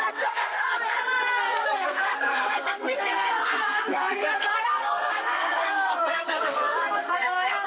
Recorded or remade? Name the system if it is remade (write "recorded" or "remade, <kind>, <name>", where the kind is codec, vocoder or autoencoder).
remade, codec, SNAC